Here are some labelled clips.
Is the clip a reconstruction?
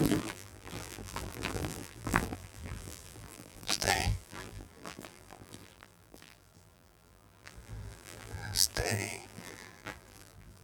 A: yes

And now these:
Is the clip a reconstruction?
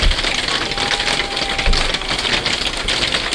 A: no